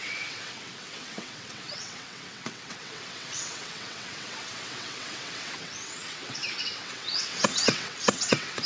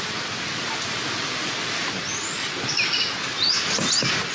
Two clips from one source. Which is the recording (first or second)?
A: second